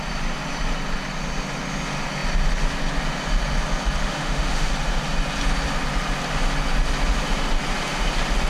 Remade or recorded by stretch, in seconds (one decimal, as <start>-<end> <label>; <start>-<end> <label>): 0.0-4.0 recorded; 4.0-4.7 remade; 4.7-8.5 recorded